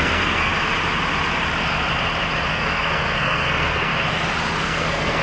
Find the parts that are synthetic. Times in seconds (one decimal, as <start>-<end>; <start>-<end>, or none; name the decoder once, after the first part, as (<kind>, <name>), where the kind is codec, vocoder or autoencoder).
0.0-0.5 (codec, SNAC); 2.5-3.9; 4.6-5.2